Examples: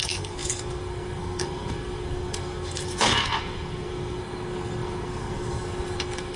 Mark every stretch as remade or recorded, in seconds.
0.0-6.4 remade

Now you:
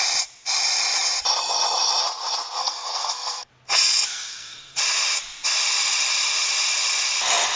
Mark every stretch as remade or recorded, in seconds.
0.0-2.6 recorded; 2.6-3.5 remade; 3.5-4.1 recorded; 4.1-4.8 remade; 4.8-7.6 recorded

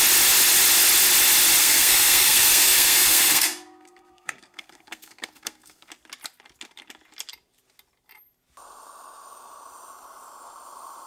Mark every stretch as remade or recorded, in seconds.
0.0-1.6 recorded; 1.6-5.9 remade; 5.9-11.1 recorded